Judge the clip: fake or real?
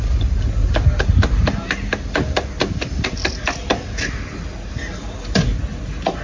real